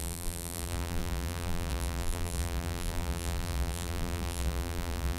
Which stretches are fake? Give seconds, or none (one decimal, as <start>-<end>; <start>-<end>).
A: 0.0-5.2